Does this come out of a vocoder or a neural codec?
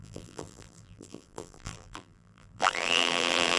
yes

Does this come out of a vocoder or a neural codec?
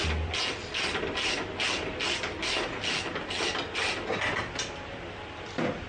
no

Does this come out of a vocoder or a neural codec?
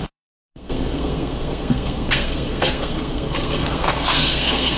yes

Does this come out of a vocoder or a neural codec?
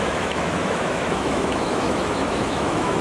yes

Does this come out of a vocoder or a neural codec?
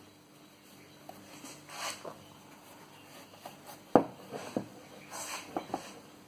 no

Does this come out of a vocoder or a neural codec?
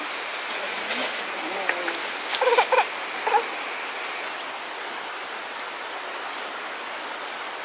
no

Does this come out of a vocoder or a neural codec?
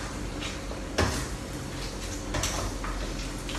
no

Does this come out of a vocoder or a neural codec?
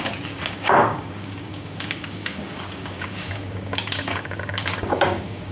yes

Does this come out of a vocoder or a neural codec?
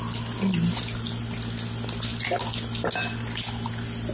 no